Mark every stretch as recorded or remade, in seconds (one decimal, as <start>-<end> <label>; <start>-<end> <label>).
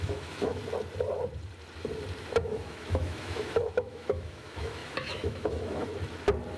0.0-0.6 remade; 0.6-2.4 recorded; 2.4-5.9 remade; 5.9-6.6 recorded